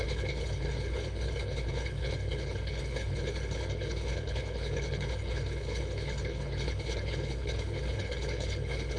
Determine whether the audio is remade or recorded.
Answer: remade